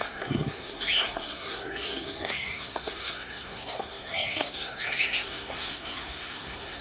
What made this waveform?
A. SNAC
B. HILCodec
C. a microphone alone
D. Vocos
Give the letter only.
A